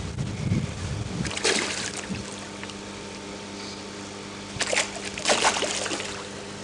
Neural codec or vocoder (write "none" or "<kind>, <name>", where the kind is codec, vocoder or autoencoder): none